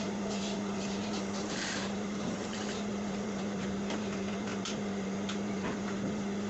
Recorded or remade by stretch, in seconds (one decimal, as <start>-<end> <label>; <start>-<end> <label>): 0.0-6.5 remade